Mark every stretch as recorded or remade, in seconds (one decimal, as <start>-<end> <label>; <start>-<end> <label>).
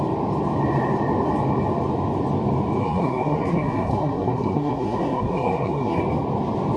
0.0-2.8 recorded; 2.8-6.0 remade; 6.0-6.8 recorded